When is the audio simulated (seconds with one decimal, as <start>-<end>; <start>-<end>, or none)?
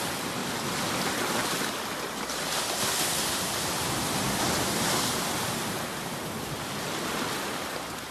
none